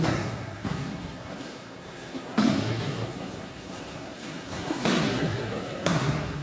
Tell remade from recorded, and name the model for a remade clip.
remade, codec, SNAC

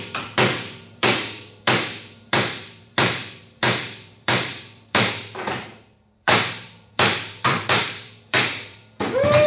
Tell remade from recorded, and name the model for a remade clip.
remade, vocoder, BigVGAN v2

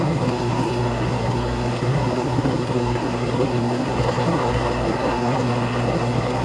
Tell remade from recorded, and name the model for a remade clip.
remade, codec, SNAC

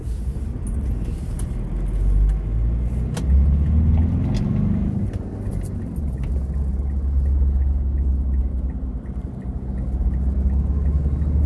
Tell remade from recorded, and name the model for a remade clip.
recorded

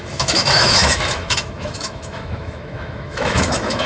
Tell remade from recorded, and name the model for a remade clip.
remade, autoencoder, DAC-VAE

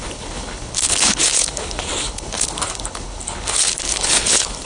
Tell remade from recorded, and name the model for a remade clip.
remade, codec, HILCodec